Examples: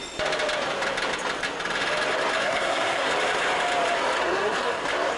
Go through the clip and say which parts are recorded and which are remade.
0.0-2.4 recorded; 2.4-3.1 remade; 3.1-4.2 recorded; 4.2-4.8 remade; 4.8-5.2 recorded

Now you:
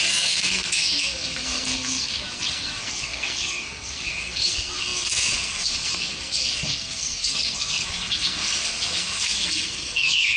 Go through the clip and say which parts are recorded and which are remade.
0.0-10.4 remade